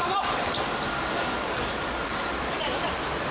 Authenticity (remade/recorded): recorded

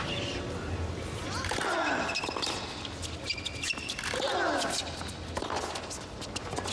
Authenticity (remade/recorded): recorded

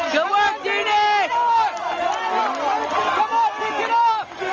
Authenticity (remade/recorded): recorded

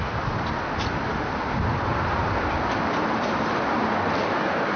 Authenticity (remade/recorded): recorded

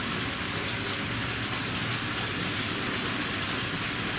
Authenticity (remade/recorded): recorded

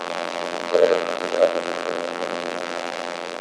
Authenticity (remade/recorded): remade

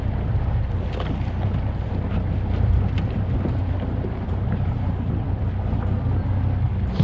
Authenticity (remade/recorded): recorded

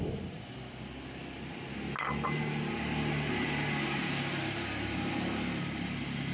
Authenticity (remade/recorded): recorded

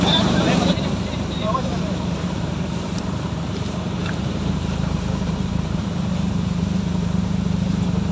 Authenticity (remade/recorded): remade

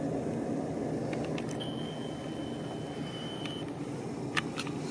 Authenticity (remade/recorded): recorded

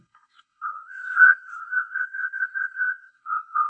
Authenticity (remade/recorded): remade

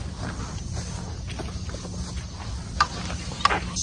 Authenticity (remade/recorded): recorded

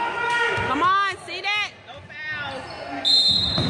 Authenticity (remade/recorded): recorded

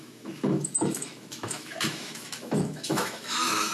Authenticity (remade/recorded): remade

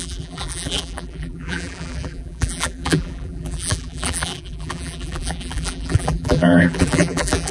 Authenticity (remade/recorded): remade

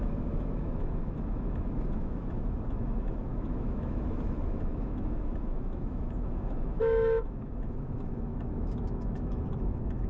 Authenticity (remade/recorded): remade